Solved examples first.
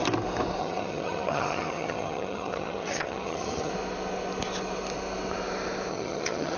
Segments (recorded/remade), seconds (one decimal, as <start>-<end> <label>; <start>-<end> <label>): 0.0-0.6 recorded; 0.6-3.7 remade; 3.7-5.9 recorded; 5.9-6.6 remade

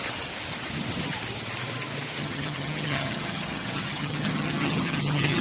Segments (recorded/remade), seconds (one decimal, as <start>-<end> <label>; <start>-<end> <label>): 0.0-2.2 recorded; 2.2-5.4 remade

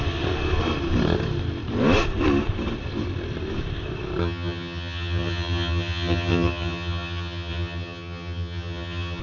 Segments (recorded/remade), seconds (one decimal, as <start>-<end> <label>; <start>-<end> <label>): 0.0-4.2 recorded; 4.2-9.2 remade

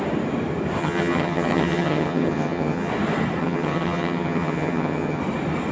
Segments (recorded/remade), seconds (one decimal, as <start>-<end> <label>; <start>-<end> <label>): 0.0-0.8 recorded; 0.8-2.9 remade; 2.9-3.4 recorded; 3.4-5.2 remade; 5.2-5.7 recorded

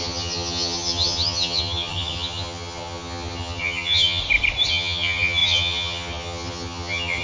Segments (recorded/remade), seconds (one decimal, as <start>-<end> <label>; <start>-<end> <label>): 0.0-4.2 remade; 4.2-4.7 recorded; 4.7-7.2 remade

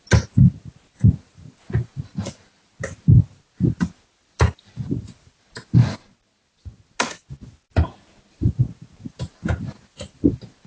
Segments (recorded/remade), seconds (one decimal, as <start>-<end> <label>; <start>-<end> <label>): 0.0-10.7 recorded

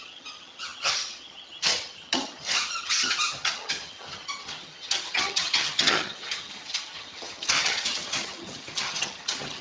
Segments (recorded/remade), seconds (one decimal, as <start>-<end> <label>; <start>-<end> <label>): 0.0-9.6 remade